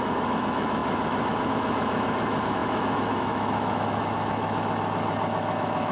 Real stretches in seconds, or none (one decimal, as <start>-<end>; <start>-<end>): none